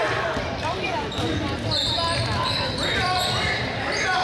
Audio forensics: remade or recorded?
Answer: remade